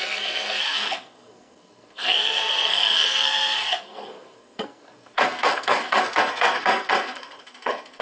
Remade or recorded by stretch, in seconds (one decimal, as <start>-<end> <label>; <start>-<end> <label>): 0.0-8.0 remade